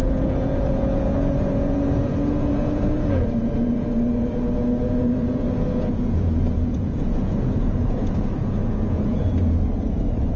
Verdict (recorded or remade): remade